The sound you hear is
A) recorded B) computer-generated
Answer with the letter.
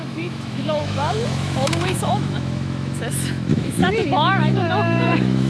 B